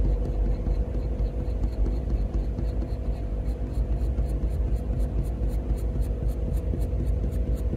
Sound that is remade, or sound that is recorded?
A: recorded